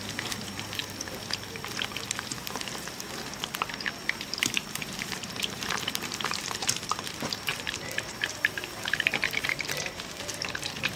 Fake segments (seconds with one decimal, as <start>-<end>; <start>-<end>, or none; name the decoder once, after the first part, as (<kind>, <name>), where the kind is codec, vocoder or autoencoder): 0.0-0.8 (vocoder, BigVGAN v2); 3.5-11.0

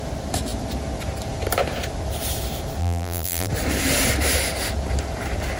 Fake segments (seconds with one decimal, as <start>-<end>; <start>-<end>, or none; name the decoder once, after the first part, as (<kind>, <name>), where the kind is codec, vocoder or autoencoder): 2.8-3.5 (vocoder, BigVGAN v2)

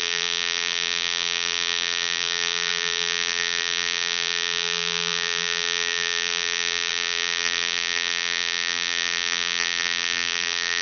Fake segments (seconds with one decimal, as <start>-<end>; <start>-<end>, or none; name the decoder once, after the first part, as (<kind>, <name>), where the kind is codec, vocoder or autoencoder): 0.0-10.8 (vocoder, BigVGAN v2)

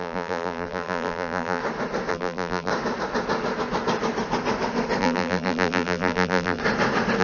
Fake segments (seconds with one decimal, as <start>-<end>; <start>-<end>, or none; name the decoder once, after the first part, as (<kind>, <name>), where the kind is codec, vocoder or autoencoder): 0.0-1.6 (vocoder, BigVGAN v2); 2.1-2.7; 5.0-6.6